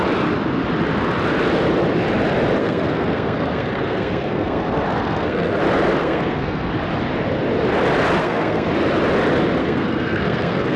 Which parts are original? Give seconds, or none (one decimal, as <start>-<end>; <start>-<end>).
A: 0.0-2.6; 5.6-6.0; 6.7-8.2; 8.7-9.6